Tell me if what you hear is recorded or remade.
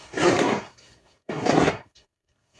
remade